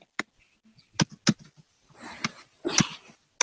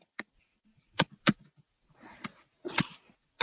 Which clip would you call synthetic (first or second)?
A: second